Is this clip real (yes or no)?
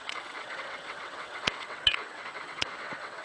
no